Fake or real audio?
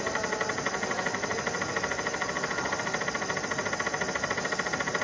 real